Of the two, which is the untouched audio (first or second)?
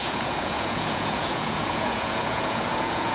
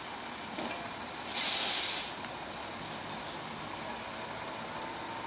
second